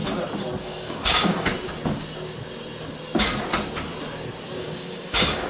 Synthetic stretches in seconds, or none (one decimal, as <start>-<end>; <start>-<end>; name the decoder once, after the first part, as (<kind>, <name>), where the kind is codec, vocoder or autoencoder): 0.6-1.5 (codec, DAC); 4.6-5.5